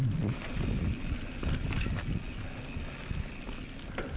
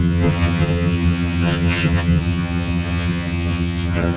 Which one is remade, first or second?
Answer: second